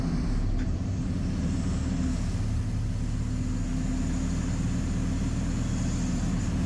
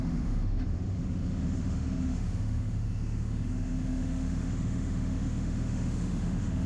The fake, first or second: second